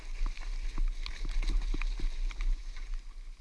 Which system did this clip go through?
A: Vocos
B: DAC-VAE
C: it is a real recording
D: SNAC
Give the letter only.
C